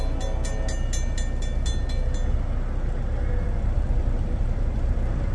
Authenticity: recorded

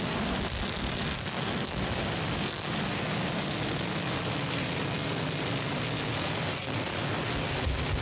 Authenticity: recorded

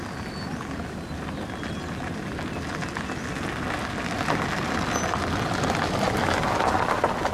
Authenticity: recorded